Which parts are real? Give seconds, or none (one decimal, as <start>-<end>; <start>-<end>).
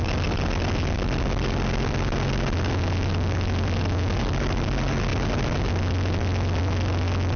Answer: 0.0-7.4